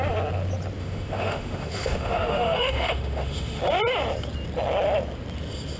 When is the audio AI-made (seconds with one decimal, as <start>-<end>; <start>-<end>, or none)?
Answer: 0.8-3.6